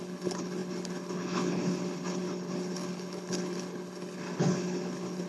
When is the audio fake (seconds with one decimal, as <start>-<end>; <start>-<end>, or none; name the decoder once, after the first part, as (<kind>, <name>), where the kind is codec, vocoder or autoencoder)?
0.0-5.3 (codec, HILCodec)